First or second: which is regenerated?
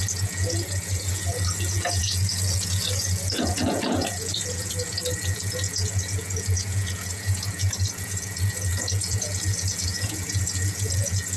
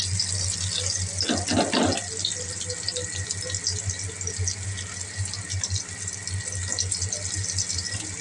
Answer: first